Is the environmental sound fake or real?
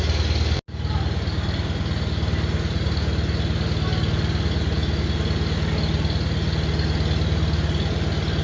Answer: real